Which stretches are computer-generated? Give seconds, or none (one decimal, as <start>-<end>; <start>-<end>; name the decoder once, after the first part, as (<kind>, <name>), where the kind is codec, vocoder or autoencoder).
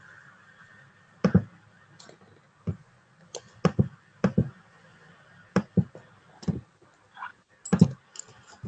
2.7-3.8 (vocoder, Vocos); 4.4-5.1